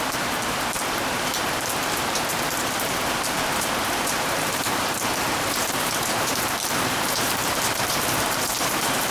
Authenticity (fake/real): fake